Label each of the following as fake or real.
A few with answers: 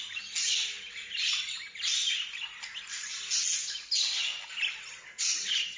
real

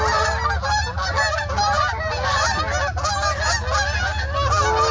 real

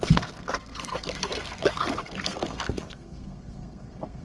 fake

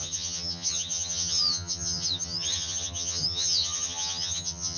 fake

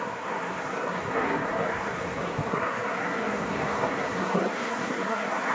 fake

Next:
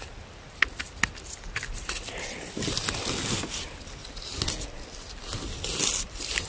real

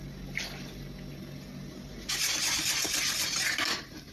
real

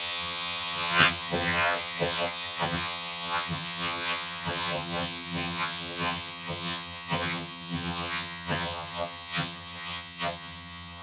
fake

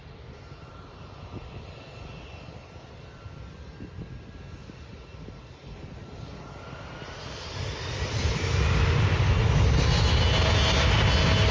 real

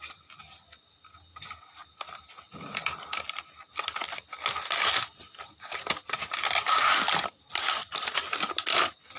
real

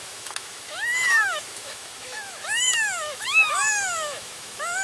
fake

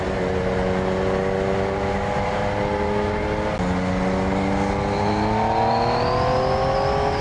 real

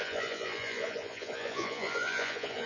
fake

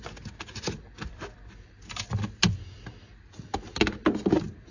real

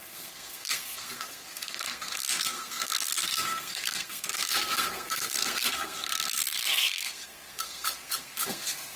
fake